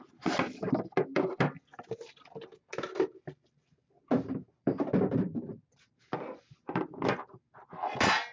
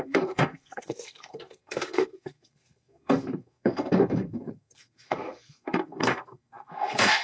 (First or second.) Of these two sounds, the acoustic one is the first